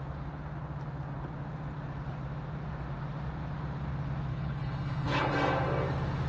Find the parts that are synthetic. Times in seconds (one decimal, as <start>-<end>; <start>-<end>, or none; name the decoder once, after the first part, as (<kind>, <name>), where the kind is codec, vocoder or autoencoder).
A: 4.3-5.3 (codec, HILCodec)